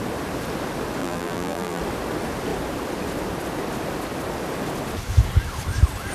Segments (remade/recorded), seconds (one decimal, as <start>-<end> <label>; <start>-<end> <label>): 0.0-1.0 recorded; 1.0-1.8 remade; 1.8-6.1 recorded